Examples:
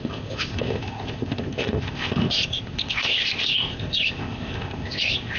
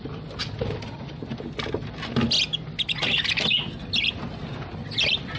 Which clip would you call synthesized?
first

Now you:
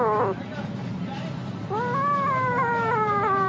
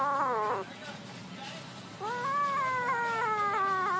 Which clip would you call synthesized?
first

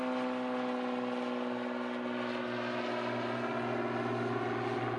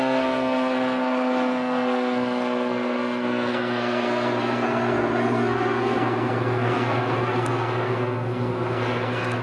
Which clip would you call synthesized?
second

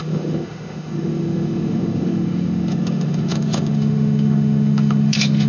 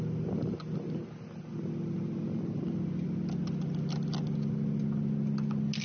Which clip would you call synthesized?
first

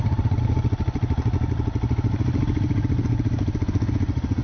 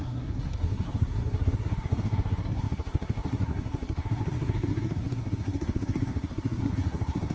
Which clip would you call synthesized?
second